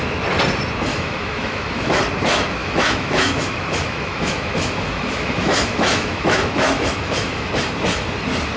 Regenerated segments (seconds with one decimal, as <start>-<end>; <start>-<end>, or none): 0.9-2.0; 2.6-7.5